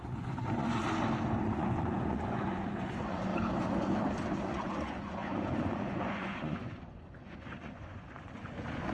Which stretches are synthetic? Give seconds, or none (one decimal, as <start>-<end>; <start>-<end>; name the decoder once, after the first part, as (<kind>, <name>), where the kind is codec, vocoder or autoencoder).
0.0-0.8 (vocoder, Vocos); 1.4-3.3; 4.4-8.9

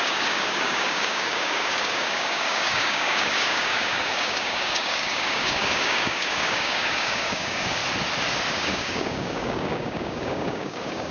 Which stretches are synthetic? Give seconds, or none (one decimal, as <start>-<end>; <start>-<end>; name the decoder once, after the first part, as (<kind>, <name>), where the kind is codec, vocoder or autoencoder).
0.0-7.8 (codec, DAC); 8.5-11.1

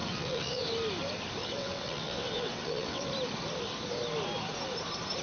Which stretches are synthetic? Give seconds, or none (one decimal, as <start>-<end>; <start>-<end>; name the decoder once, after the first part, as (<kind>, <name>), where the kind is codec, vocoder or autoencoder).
0.0-0.6 (vocoder, WaveNeXt); 1.4-3.1

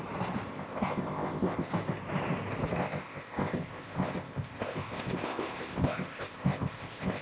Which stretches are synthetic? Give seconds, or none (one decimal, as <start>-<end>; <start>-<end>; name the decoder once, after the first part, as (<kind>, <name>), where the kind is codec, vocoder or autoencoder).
0.5-1.7 (codec, ZipCodec); 2.7-7.2

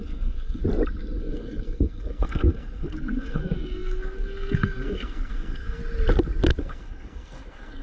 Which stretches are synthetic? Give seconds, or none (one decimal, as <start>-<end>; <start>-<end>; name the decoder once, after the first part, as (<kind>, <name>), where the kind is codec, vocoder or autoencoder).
0.0-0.6 (codec, SNAC); 1.2-5.8; 6.6-7.8

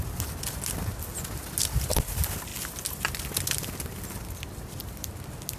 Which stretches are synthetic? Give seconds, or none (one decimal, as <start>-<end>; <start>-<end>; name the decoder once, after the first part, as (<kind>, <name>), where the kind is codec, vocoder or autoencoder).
none